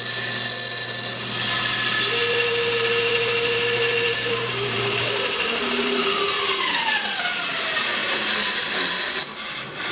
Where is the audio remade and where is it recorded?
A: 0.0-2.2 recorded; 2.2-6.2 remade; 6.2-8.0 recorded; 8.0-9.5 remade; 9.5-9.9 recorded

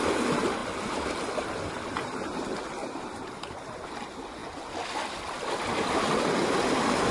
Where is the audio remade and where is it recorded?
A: 0.0-2.8 recorded; 2.8-3.4 remade; 3.4-7.1 recorded

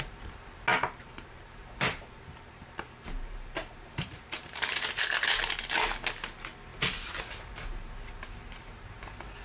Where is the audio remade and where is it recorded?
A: 0.0-0.7 recorded; 0.7-4.6 remade; 4.6-9.4 recorded

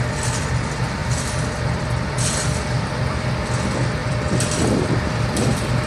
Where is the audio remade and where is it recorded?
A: 0.0-1.0 recorded; 1.0-3.3 remade; 3.3-4.0 recorded; 4.0-5.9 remade

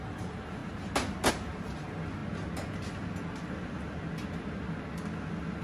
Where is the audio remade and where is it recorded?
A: 0.0-0.6 remade; 0.6-1.3 recorded; 1.3-2.2 remade; 2.2-5.6 recorded

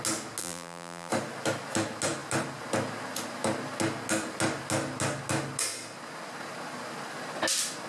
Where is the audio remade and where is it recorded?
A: 0.0-0.4 recorded; 0.4-1.1 remade; 1.1-7.9 recorded

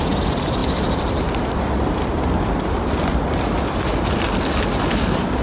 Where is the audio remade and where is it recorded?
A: 0.0-0.6 recorded; 0.6-2.6 remade; 2.6-5.4 recorded

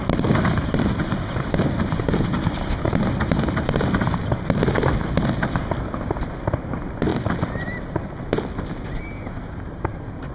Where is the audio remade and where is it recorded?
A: 0.0-4.2 remade; 4.2-6.4 recorded; 6.4-7.1 remade; 7.1-9.0 recorded; 9.0-10.3 remade